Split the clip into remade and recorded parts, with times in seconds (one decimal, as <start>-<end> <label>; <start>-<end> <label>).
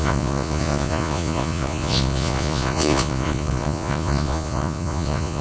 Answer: 0.0-5.4 remade